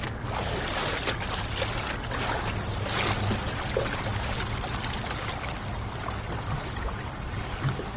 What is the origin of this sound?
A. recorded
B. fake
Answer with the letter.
A